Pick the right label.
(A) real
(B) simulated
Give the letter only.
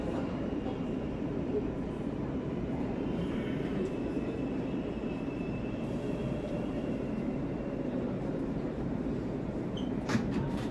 B